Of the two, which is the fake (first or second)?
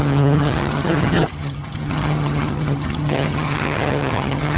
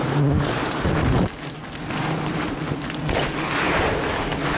first